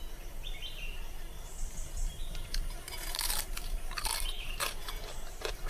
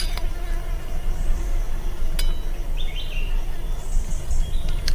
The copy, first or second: first